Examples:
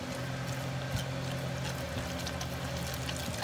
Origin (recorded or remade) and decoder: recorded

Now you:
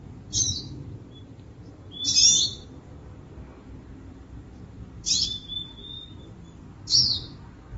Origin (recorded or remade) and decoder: remade, vocoder, BigVGAN v2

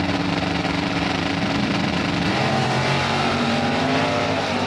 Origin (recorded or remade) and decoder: remade, vocoder, BigVGAN v2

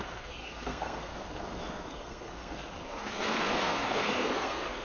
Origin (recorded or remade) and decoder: remade, codec, SNAC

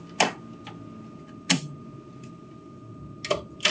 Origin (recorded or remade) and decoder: recorded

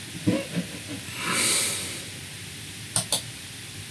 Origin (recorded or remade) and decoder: recorded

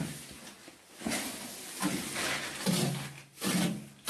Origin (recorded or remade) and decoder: recorded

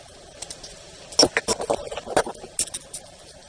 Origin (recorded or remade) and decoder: recorded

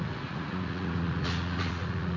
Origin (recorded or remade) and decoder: remade, vocoder, Vocos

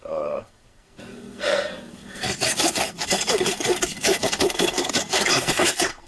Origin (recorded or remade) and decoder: remade, codec, SNAC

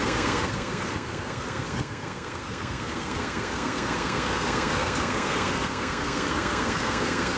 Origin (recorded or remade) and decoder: remade, codec, SNAC